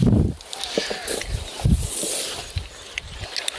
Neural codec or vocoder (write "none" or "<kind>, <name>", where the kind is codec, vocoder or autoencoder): none